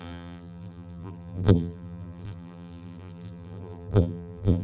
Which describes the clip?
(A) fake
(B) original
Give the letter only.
A